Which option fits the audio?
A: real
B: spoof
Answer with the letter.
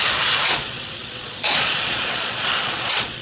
B